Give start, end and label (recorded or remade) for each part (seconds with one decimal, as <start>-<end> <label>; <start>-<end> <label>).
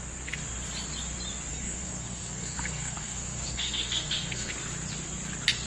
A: 0.0-1.5 recorded; 1.5-4.5 remade; 4.5-5.7 recorded